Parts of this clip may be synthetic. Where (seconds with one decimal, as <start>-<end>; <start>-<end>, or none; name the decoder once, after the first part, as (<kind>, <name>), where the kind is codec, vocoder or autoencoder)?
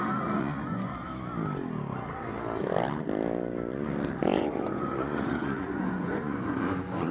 0.0-1.1 (vocoder, Vocos); 4.2-7.1